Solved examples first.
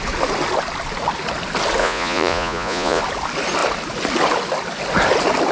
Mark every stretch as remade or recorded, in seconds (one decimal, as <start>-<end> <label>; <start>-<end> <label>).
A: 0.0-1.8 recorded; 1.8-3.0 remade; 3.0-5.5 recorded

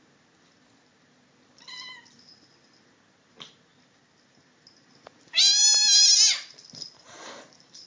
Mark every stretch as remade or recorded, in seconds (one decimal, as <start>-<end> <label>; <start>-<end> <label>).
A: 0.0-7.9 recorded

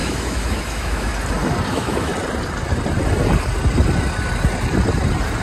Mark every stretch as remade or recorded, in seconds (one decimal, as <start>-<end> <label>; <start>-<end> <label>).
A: 0.0-1.1 remade; 1.1-1.7 recorded; 1.7-2.1 remade; 2.1-5.4 recorded

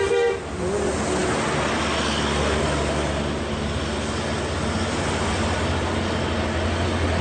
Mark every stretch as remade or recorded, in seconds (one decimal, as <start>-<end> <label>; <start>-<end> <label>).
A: 0.0-7.2 recorded